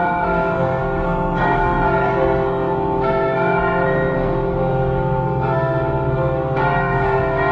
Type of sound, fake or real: fake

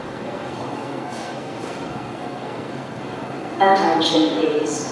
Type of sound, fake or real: fake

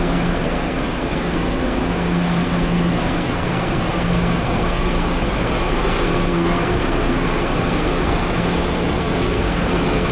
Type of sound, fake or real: fake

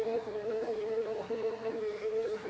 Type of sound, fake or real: fake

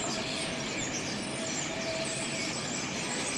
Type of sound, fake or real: real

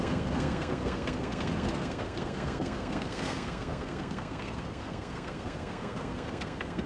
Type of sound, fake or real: fake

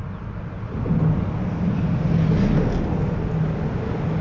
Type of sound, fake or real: real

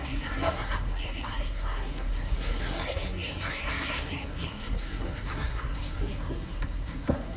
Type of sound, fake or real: fake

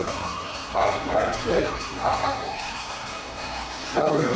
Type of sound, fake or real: fake